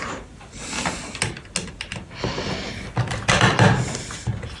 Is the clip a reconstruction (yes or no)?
no